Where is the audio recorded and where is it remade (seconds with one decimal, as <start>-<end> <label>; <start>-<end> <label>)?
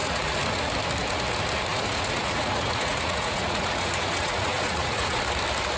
0.0-0.6 remade; 0.6-1.7 recorded; 1.7-5.2 remade; 5.2-5.8 recorded